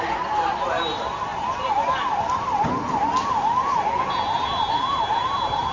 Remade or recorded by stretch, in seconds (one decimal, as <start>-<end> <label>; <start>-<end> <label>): 0.0-5.7 recorded